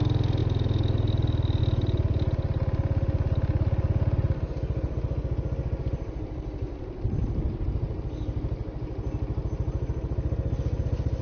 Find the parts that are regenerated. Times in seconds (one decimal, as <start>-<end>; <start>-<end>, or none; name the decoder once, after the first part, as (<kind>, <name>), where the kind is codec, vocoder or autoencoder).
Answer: none